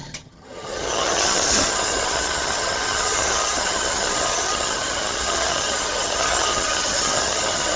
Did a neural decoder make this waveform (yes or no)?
yes